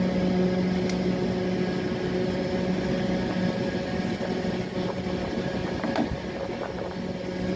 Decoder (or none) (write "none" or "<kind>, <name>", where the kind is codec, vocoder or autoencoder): none